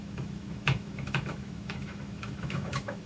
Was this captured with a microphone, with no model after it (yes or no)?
no